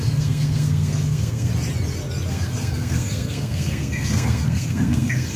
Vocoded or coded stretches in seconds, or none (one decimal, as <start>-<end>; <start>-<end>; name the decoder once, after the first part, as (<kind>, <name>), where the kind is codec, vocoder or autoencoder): 0.0-1.5 (codec, SNAC); 2.3-5.4